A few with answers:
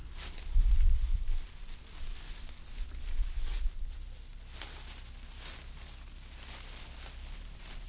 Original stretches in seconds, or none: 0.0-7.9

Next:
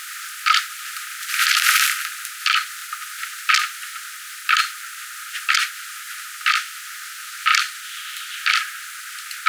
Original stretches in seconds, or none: 0.0-9.5